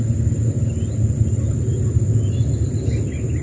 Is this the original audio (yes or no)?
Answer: yes